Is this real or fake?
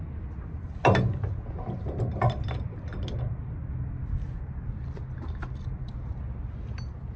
real